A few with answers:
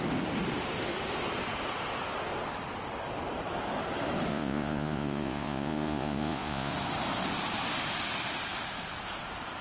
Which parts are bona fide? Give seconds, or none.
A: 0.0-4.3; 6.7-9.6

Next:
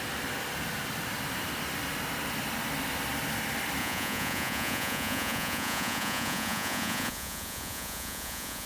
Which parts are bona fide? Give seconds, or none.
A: 0.0-3.8

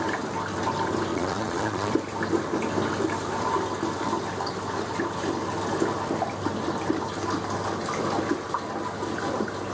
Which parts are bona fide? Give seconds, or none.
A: 0.0-1.1; 1.9-9.7

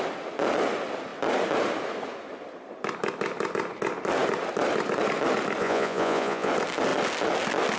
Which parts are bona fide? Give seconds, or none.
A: 0.0-5.6; 6.5-7.8

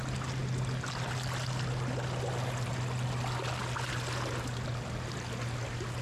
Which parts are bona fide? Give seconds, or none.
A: 0.0-6.0

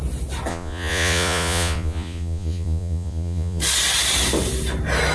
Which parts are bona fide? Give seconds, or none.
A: 0.0-0.5; 3.6-5.1

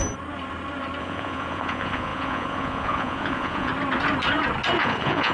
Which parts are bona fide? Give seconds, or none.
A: 0.0-1.0; 3.7-4.8